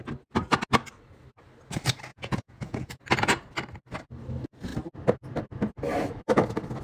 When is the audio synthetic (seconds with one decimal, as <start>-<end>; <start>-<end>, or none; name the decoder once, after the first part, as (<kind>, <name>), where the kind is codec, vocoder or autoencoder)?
2.1-3.0 (vocoder, Vocos)